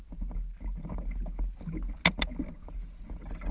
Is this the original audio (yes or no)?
yes